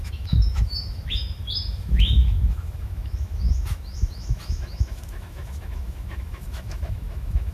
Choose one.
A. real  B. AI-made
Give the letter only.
B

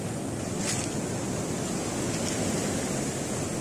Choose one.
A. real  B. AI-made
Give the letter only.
A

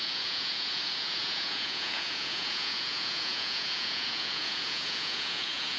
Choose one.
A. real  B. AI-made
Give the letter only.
B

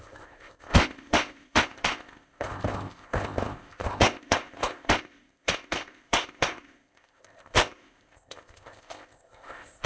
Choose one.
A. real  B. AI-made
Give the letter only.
B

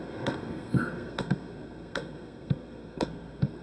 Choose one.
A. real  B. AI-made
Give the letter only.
B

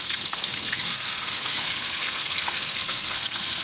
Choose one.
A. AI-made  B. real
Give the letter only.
A